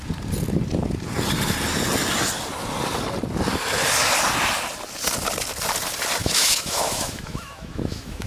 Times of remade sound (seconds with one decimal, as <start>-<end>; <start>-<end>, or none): 6.2-8.3